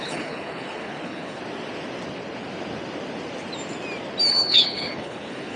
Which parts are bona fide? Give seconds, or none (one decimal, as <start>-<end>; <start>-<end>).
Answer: 1.4-4.3

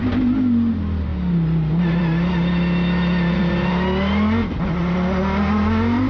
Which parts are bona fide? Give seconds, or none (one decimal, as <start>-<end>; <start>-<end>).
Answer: 0.0-6.1

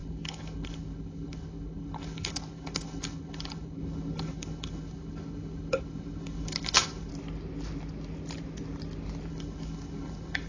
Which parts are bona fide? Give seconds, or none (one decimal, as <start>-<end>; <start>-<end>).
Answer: 7.1-9.3

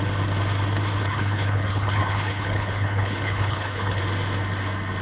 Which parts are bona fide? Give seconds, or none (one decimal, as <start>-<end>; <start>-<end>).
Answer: 0.0-1.0; 4.0-5.0